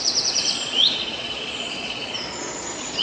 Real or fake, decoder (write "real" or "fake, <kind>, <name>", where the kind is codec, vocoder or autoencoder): fake, vocoder, Vocos